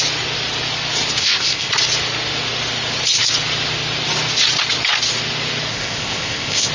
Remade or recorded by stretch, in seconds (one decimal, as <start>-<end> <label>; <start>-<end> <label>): 0.0-1.2 recorded; 1.2-1.7 remade; 1.7-5.7 recorded; 5.7-6.7 remade

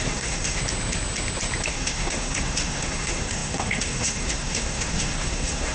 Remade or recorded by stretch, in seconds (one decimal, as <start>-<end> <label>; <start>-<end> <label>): 0.0-0.6 remade; 0.6-1.7 recorded; 1.7-5.7 remade

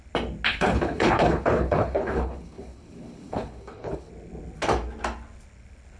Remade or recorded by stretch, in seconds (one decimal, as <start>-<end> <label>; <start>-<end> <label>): 0.0-0.5 recorded; 0.5-4.1 remade; 4.1-6.0 recorded

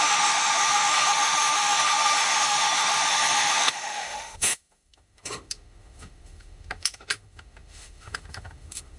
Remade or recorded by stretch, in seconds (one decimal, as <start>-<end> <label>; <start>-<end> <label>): 0.0-9.0 remade

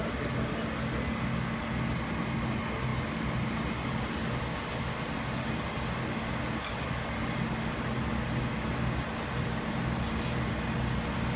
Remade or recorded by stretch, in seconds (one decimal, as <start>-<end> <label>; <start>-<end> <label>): 0.0-11.4 recorded

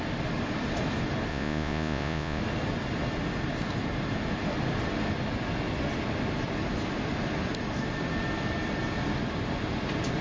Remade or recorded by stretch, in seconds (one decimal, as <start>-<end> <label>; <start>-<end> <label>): 0.0-1.3 recorded; 1.3-2.4 remade; 2.4-10.2 recorded

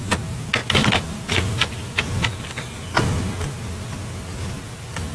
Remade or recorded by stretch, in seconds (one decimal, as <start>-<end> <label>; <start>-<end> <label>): 0.0-5.1 recorded

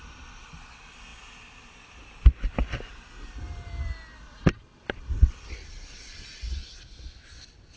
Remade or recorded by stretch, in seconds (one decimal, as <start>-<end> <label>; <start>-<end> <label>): 0.0-7.8 recorded